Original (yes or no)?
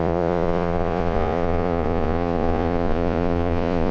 no